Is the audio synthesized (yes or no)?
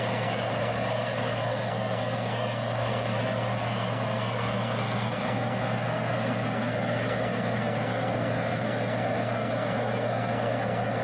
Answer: yes